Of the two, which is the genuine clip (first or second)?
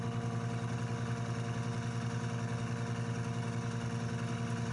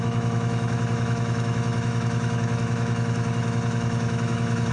first